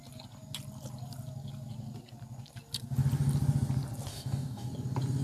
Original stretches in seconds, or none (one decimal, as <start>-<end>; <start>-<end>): 0.0-4.1; 4.7-5.2